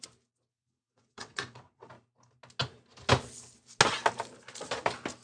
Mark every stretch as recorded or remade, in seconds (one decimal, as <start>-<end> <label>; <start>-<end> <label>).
0.0-0.5 recorded; 0.5-1.9 remade; 1.9-5.2 recorded

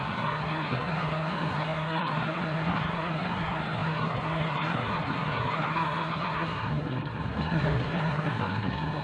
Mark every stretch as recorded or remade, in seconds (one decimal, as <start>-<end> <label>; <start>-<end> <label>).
0.0-9.0 remade

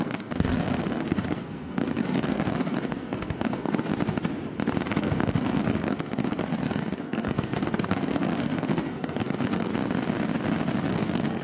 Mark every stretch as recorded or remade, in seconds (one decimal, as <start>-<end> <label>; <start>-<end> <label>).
0.0-3.9 remade; 3.9-4.9 recorded; 4.9-9.7 remade; 9.7-10.9 recorded; 10.9-11.4 remade

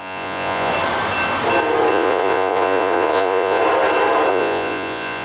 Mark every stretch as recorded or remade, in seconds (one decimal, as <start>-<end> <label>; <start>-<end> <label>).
0.0-0.7 remade; 0.7-1.9 recorded; 1.9-3.6 remade; 3.6-4.3 recorded; 4.3-5.2 remade

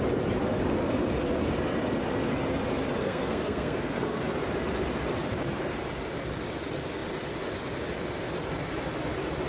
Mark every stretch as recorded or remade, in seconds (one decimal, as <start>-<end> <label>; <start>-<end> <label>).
0.0-3.0 recorded; 3.0-4.2 remade; 4.2-9.5 recorded